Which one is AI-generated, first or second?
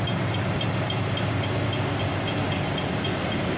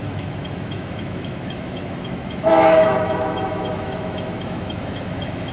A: second